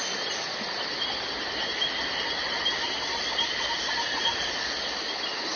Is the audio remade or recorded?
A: recorded